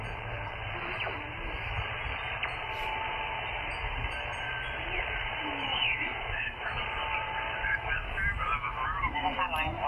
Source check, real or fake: fake